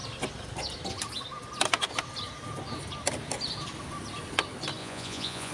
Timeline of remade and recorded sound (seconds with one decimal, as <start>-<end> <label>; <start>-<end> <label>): 0.0-4.8 recorded; 4.8-5.5 remade